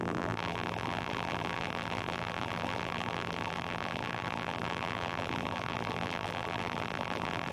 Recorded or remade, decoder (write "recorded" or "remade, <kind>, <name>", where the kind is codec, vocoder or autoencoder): remade, vocoder, BigVGAN v2